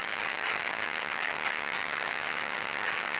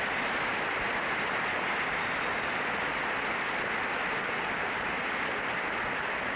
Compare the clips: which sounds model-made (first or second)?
first